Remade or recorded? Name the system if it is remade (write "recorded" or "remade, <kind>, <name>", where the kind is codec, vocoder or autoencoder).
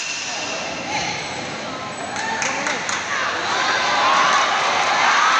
recorded